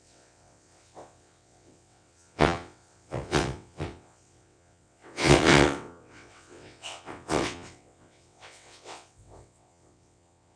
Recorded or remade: remade